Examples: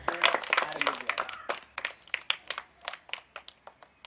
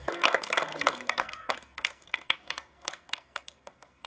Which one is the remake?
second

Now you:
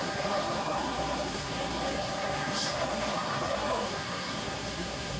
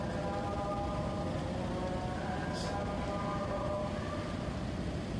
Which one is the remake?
first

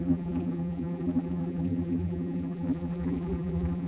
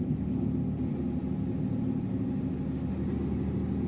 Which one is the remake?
first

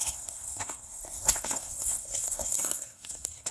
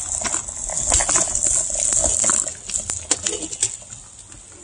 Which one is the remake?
first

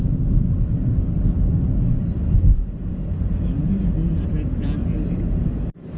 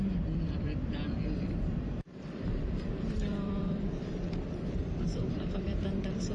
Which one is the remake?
second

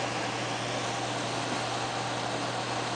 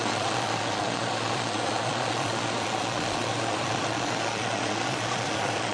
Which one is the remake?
second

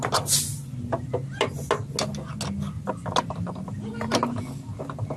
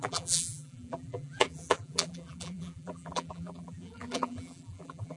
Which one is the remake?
second